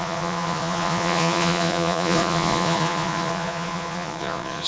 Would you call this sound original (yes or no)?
no